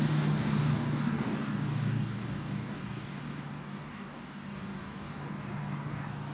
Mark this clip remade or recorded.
remade